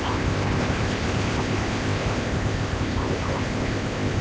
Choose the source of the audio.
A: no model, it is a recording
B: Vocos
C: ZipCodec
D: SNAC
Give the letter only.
C